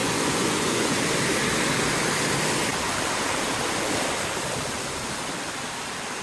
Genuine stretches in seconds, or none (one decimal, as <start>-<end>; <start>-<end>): 1.0-6.2